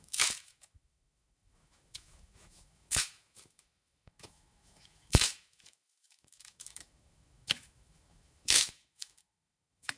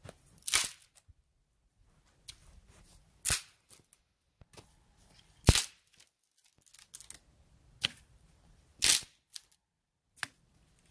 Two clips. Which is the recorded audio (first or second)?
second